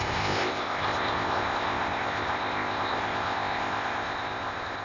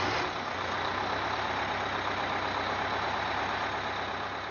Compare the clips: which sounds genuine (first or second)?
second